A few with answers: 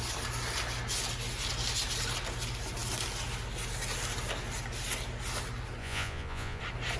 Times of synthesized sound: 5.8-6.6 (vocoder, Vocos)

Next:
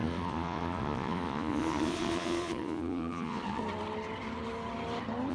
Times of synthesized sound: 0.0-3.6 (vocoder, Vocos)

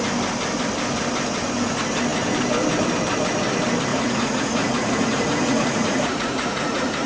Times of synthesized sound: 3.9-7.1 (vocoder, Vocos)

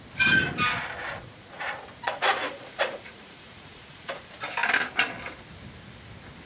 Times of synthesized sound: 1.1-4.2 (vocoder, Vocos)

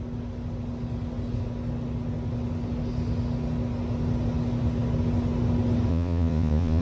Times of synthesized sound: 5.9-6.8 (vocoder, Vocos)

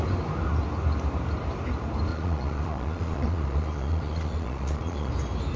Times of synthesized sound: 2.1-5.1 (vocoder, Vocos)

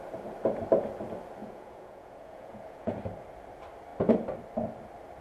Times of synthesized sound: 1.4-3.0 (vocoder, Vocos)

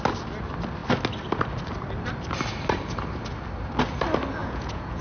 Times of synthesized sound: 4.4-5.0 (vocoder, Vocos)